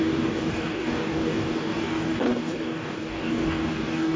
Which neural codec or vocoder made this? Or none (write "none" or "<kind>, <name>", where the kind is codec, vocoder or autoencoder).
codec, DAC